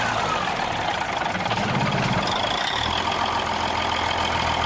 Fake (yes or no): no